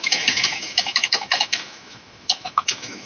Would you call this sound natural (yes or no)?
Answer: no